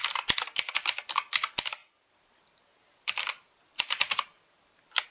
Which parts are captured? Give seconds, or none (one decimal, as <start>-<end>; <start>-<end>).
0.0-1.8